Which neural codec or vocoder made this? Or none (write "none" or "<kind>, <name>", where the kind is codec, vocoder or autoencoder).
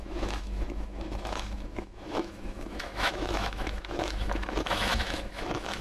autoencoder, DAC-VAE